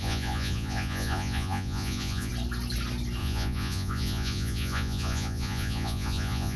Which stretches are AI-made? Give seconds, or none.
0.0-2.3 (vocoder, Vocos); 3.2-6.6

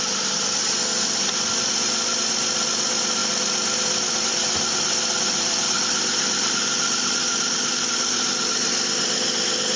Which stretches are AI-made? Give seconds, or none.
none

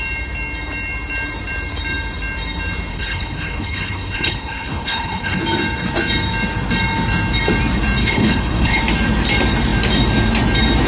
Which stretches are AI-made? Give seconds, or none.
2.9-5.4 (codec, HILCodec); 8.0-8.8

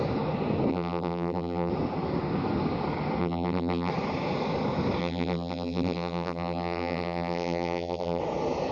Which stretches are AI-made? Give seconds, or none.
0.7-1.7 (vocoder, BigVGAN v2); 3.2-3.9; 5.0-8.2

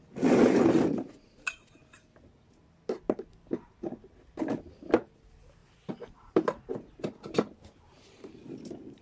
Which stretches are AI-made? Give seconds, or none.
none